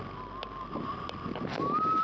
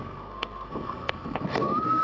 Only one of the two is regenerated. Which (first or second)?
second